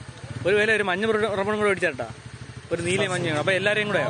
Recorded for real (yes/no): yes